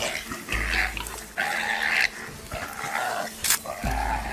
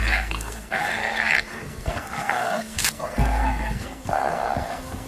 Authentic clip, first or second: first